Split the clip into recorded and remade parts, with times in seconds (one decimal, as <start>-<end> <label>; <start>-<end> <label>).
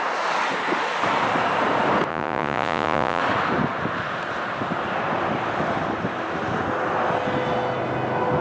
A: 0.0-2.1 recorded; 2.1-3.2 remade; 3.2-8.4 recorded